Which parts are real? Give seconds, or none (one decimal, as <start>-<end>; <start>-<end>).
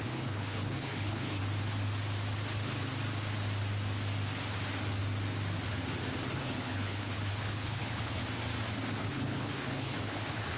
1.4-6.4; 8.2-9.1